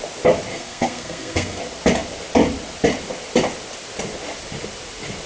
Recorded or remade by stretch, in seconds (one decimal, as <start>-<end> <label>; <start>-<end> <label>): 0.0-0.5 recorded; 0.5-1.6 remade; 1.6-5.3 recorded